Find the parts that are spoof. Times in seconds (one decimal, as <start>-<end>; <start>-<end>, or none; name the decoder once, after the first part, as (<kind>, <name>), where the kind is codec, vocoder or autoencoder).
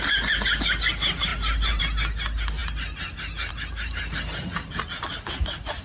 none